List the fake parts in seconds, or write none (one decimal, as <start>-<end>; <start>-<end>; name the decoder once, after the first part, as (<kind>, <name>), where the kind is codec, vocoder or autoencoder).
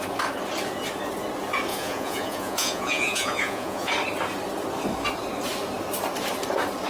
1.7-3.9 (vocoder, Vocos)